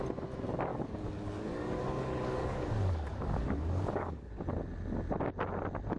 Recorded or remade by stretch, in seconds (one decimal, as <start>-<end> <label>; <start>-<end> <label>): 0.0-0.7 recorded; 0.7-4.3 remade; 4.3-6.0 recorded